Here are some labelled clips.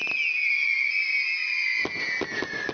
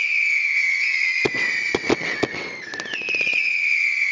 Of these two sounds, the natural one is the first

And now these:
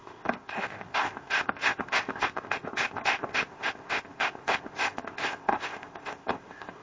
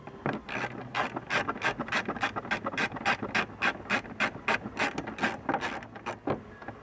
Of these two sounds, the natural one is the second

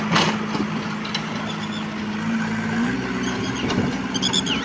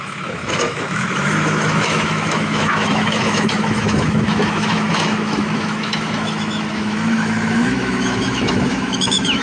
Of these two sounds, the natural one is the first